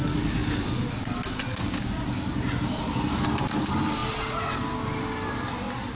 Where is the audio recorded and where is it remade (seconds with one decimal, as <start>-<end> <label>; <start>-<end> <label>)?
0.0-5.9 recorded